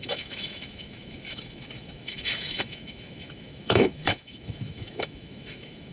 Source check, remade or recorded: remade